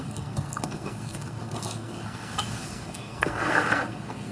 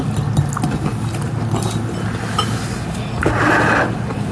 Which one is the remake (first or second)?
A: first